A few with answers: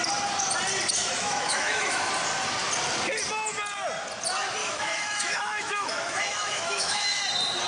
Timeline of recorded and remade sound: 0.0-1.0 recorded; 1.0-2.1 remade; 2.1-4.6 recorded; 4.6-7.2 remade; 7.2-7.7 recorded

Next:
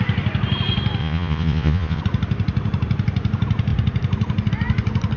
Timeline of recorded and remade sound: 0.0-1.0 recorded; 1.0-2.0 remade; 2.0-5.2 recorded